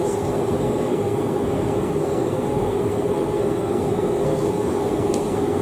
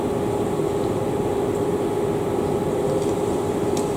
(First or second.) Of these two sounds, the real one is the second